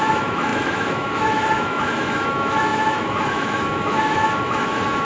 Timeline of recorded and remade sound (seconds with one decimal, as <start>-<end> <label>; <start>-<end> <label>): 0.0-5.0 remade